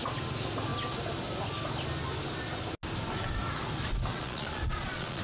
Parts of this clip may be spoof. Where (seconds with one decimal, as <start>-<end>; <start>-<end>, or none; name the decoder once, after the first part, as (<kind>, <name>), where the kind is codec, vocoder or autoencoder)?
4.1-5.2 (vocoder, Vocos)